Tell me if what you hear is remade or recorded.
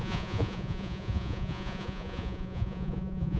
remade